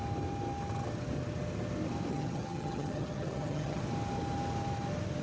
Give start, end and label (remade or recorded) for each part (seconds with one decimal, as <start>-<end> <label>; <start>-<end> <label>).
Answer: 0.0-2.1 recorded; 2.1-3.8 remade; 3.8-5.2 recorded